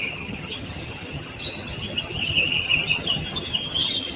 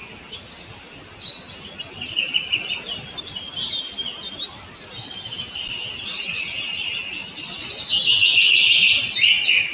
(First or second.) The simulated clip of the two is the first